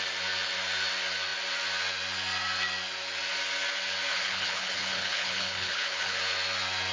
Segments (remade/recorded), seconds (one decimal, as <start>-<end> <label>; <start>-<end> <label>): 0.0-4.1 recorded; 4.1-6.2 remade; 6.2-6.9 recorded